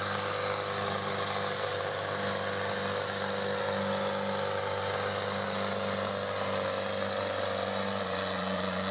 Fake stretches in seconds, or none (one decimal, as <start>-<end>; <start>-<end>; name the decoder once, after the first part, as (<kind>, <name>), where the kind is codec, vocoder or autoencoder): 8.0-8.9 (vocoder, Vocos)